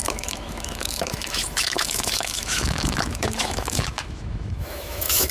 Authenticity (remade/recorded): remade